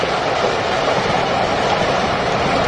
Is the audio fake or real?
real